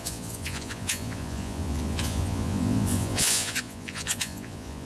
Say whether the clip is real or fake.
fake